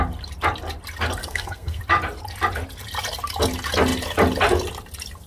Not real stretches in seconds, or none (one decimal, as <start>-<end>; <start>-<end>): 1.2-1.8